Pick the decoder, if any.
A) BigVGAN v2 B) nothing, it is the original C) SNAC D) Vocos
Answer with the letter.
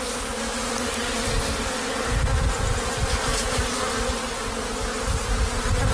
B